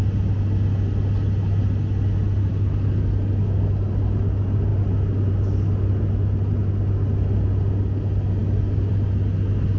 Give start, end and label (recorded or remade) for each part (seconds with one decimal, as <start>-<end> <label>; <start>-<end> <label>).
0.0-9.8 recorded